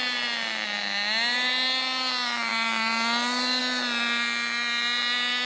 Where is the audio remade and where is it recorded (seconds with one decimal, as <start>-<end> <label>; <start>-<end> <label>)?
0.0-5.4 recorded